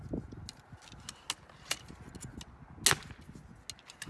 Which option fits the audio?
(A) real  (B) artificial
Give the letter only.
A